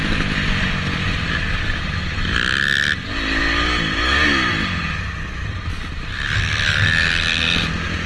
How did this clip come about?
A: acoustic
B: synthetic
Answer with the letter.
A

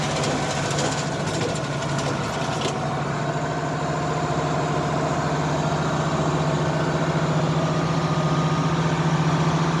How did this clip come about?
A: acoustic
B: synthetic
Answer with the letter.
A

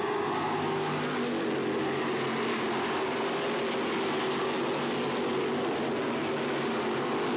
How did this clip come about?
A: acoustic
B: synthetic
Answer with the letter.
A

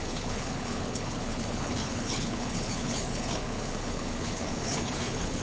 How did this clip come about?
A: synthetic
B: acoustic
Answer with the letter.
A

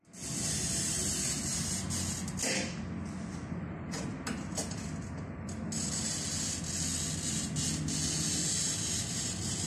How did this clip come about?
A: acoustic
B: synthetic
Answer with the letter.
A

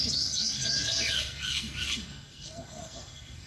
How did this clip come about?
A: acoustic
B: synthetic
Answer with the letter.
B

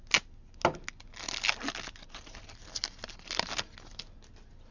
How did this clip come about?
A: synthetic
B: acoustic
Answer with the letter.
B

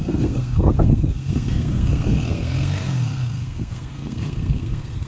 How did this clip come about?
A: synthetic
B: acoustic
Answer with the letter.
A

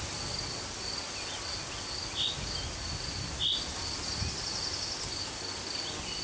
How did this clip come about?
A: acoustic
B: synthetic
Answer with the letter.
A